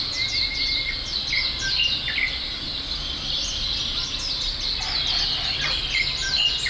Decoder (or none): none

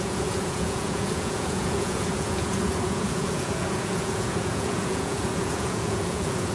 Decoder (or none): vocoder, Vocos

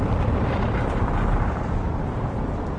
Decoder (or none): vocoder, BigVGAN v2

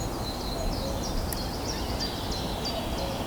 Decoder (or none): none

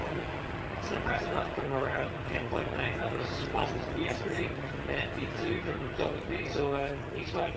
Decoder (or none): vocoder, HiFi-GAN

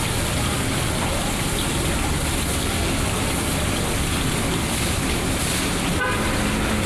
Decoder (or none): none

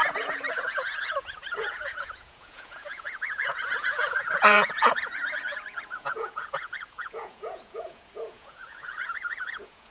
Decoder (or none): vocoder, Vocos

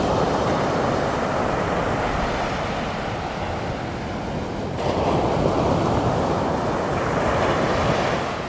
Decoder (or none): none